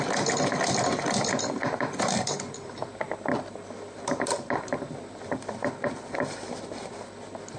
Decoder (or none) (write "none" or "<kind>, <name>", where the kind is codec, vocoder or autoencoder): none